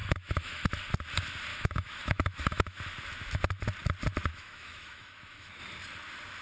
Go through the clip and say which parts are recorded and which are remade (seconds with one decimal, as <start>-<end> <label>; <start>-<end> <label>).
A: 0.0-0.7 remade; 0.7-1.5 recorded; 1.5-2.8 remade; 2.8-4.3 recorded; 4.3-5.6 remade; 5.6-6.4 recorded